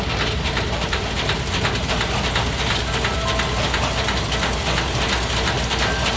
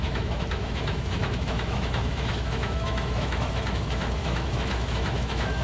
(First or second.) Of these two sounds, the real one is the first